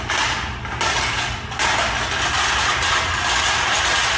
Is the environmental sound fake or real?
real